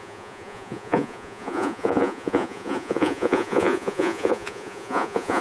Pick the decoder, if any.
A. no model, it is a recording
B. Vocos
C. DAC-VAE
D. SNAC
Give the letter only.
B